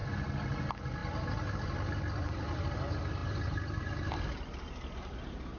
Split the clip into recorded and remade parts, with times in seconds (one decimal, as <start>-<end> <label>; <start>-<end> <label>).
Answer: 0.0-5.6 recorded